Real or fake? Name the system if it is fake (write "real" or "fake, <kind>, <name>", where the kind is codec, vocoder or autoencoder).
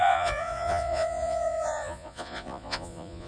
fake, vocoder, Vocos